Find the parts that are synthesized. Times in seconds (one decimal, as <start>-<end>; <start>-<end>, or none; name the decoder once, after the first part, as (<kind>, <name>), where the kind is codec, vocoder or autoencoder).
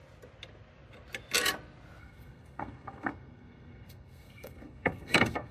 2.0-5.5 (codec, SNAC)